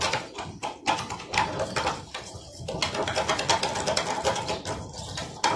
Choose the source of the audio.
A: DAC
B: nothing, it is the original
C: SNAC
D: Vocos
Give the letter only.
B